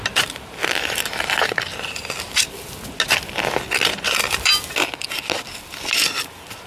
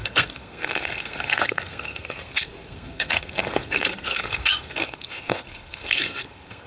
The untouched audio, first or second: first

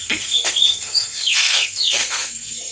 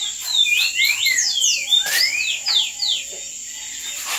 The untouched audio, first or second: second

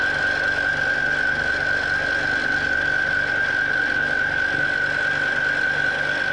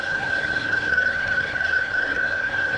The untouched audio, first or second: first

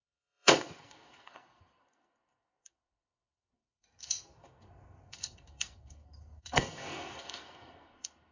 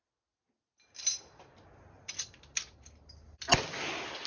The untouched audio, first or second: second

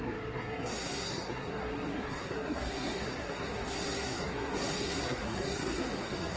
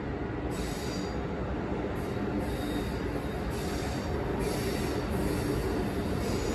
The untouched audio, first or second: second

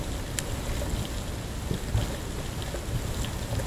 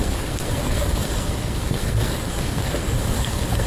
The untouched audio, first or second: first